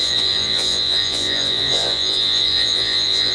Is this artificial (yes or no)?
yes